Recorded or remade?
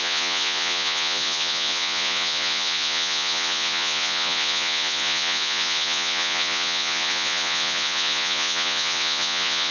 remade